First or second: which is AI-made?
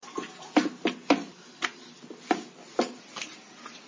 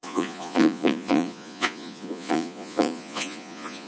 second